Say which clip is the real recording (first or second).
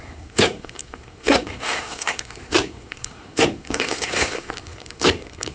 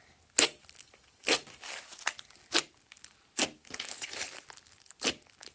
second